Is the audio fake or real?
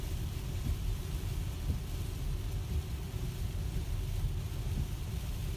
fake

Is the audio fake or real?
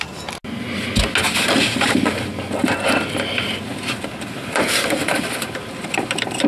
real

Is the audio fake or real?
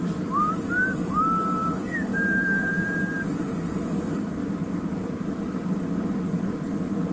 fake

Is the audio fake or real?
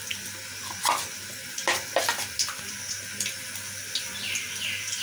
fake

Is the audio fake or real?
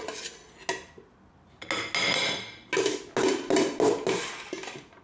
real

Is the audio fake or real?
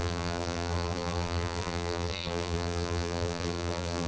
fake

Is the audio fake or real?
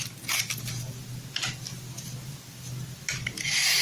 real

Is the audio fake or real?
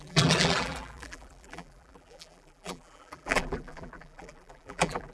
fake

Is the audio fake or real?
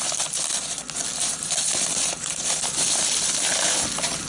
fake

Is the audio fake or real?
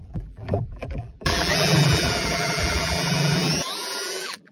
fake